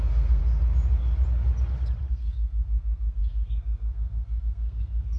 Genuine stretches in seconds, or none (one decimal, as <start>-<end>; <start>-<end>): 0.4-2.1